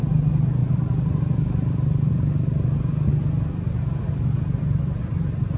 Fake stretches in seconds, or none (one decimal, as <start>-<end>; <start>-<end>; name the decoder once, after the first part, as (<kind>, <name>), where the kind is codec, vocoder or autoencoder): none